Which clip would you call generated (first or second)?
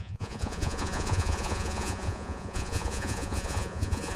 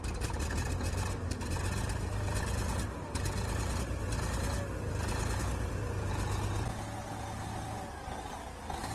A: first